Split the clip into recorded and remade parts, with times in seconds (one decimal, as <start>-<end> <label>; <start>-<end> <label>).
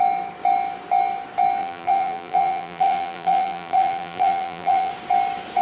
0.0-1.6 recorded; 1.6-4.9 remade; 4.9-5.6 recorded